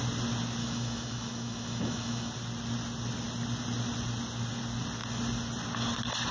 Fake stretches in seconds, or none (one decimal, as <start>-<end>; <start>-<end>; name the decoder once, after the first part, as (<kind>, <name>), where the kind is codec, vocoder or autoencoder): 0.6-2.3 (autoencoder, DAC-VAE)